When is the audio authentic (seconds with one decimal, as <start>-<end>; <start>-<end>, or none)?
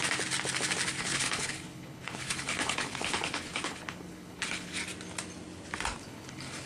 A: 0.0-1.0; 4.8-6.0